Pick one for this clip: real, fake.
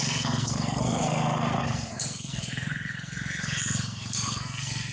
fake